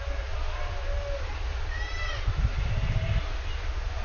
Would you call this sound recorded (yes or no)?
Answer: yes